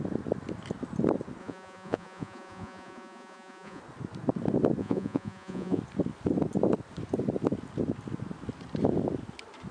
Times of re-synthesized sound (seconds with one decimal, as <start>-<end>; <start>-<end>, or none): 1.4-3.8; 4.8-5.8